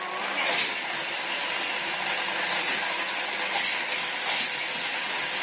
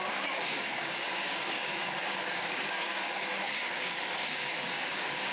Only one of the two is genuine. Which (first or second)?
first